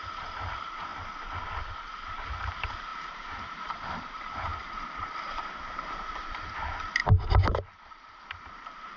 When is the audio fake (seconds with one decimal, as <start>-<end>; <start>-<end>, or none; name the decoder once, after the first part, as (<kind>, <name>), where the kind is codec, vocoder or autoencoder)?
0.0-0.9 (vocoder, BigVGAN v2); 1.7-9.0